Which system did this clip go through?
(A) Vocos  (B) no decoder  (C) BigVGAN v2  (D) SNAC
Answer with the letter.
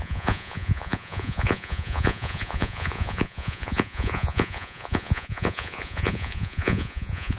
A